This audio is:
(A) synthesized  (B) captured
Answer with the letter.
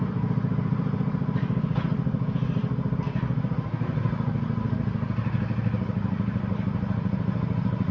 B